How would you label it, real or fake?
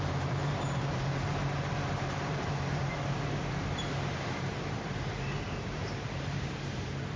fake